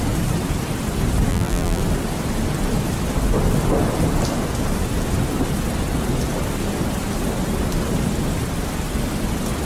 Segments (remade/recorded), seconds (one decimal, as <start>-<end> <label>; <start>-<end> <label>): 0.0-1.3 recorded; 1.3-1.8 remade; 1.8-9.6 recorded